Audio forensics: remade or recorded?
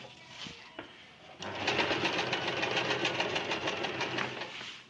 recorded